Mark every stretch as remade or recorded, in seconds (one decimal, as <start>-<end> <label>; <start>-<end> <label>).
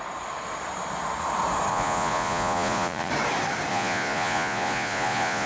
0.0-1.7 recorded; 1.7-3.1 remade; 3.1-3.7 recorded; 3.7-5.5 remade